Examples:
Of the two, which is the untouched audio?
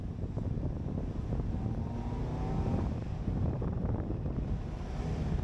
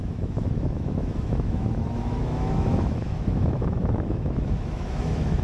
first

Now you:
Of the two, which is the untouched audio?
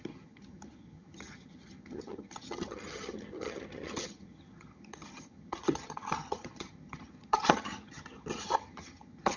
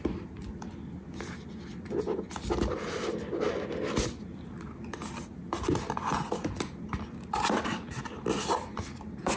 second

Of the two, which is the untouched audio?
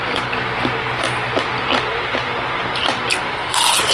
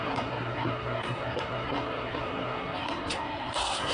first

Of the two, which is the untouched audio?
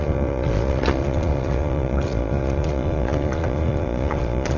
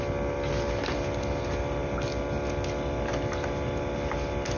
second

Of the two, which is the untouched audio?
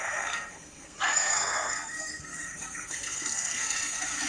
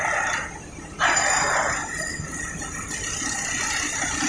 second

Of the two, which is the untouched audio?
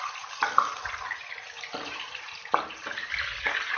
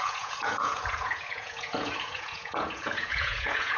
first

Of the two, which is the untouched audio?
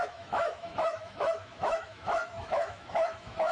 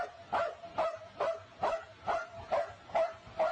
second